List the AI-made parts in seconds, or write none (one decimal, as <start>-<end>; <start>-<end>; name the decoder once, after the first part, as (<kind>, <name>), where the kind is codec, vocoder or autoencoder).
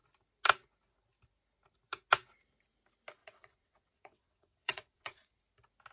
3.2-5.4 (vocoder, WaveNeXt)